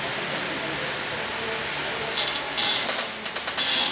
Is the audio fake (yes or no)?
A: no